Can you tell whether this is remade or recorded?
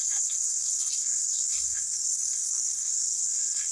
remade